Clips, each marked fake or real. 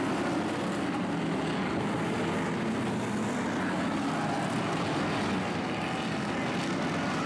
real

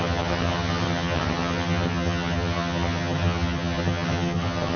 fake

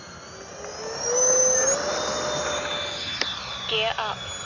real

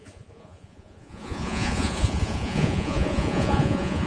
fake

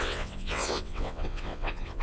fake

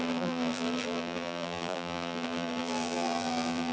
fake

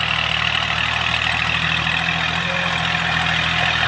real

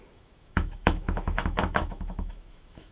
fake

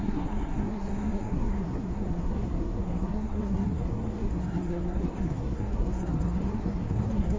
fake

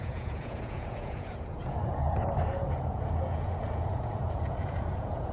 fake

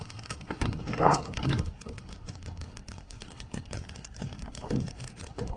fake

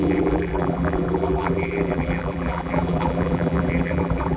fake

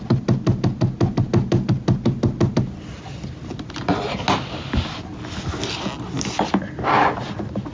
real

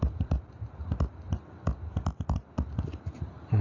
real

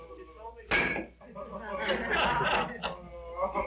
real